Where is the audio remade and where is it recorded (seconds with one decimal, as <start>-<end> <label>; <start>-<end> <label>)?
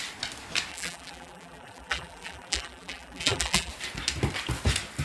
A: 0.0-0.7 recorded; 0.7-3.7 remade; 3.7-5.0 recorded